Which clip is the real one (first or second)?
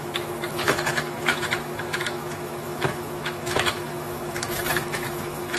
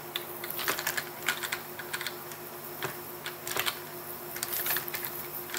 second